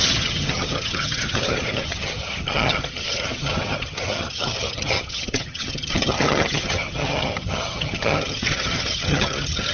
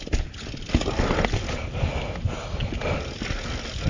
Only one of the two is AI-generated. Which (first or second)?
first